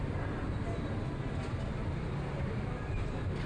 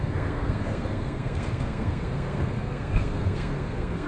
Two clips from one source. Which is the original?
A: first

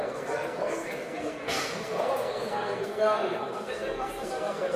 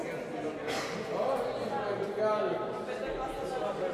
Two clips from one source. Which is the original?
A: second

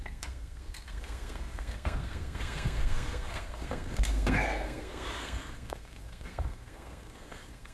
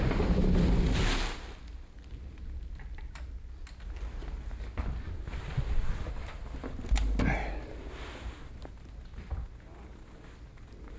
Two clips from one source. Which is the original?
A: second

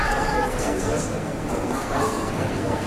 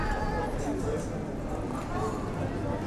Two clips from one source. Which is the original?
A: second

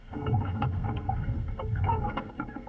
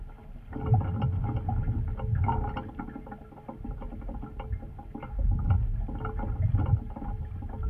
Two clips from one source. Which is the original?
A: second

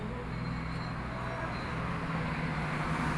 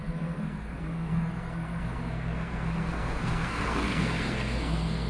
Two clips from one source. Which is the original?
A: first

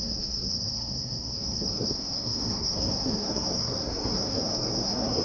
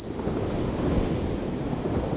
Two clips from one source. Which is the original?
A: second